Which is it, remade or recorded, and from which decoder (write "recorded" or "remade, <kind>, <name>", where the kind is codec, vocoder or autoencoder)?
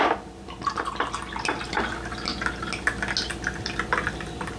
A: recorded